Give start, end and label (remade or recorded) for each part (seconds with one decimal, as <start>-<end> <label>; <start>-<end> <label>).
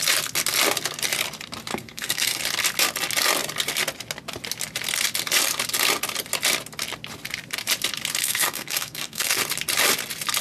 0.0-1.7 recorded; 1.7-2.4 remade; 2.4-8.2 recorded; 8.2-9.4 remade; 9.4-10.4 recorded